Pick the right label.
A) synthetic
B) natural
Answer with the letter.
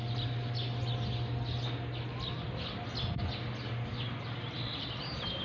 B